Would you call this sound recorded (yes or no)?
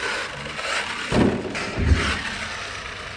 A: yes